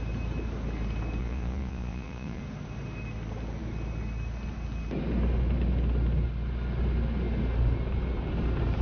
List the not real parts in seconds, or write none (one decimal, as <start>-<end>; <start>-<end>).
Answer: 1.2-2.4